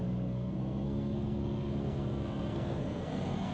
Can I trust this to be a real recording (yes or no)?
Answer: no